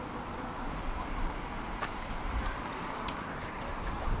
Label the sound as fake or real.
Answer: fake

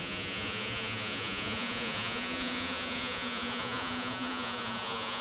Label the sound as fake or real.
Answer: fake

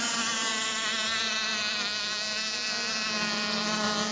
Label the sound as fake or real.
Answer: real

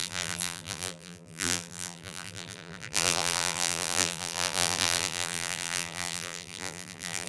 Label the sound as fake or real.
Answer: fake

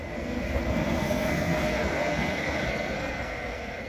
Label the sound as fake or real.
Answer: fake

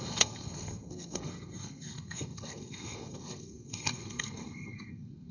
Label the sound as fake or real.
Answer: fake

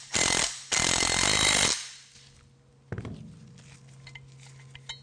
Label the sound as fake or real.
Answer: real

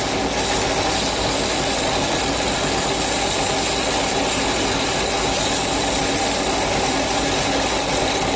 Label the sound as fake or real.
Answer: real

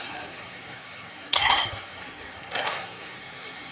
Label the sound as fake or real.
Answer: fake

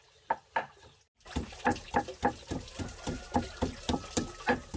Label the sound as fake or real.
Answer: real